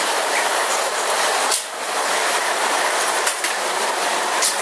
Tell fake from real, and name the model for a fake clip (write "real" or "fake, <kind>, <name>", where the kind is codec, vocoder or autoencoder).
fake, vocoder, BigVGAN v2